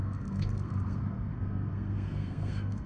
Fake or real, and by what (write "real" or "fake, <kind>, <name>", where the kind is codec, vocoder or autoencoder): fake, codec, SNAC